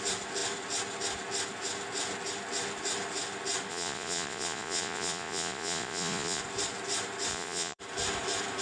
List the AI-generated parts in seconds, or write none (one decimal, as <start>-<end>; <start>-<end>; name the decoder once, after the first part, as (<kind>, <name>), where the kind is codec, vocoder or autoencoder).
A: 3.7-6.4 (vocoder, Vocos); 7.3-7.8